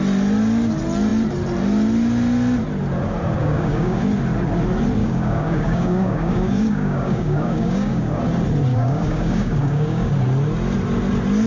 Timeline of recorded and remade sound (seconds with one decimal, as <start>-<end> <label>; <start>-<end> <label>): 0.0-3.4 recorded; 3.4-4.0 remade; 4.0-5.0 recorded; 5.0-8.2 remade; 8.2-8.7 recorded; 8.7-10.1 remade; 10.1-11.5 recorded